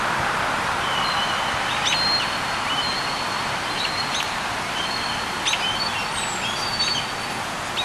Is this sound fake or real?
real